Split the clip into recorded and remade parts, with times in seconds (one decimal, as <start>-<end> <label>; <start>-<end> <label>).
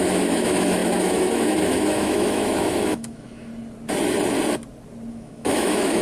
0.0-3.5 remade; 3.5-5.1 recorded; 5.1-6.0 remade